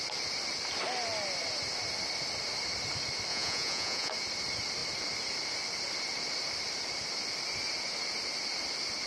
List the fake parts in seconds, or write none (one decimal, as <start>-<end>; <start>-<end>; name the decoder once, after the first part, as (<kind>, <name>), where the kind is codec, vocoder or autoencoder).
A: 3.3-4.1 (vocoder, Vocos)